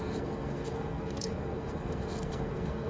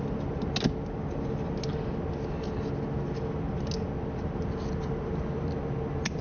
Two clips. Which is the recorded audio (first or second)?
second